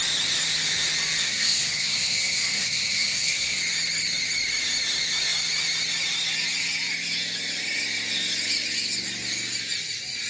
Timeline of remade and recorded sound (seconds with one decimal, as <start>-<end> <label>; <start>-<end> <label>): 0.0-1.2 recorded; 1.2-3.6 remade; 3.6-10.3 recorded